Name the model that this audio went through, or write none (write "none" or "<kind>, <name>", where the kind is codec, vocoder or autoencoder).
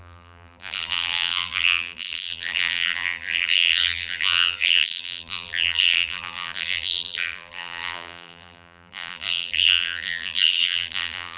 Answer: vocoder, BigVGAN v2